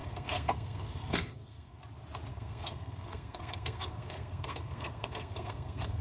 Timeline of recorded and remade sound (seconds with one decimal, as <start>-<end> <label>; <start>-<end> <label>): 0.0-1.8 remade; 1.8-2.3 recorded; 2.3-6.0 remade